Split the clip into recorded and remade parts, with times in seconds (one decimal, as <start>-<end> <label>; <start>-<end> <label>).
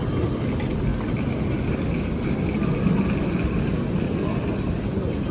0.0-5.3 recorded